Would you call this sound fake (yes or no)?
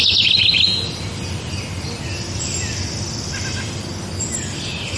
no